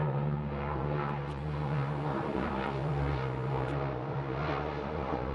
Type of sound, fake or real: fake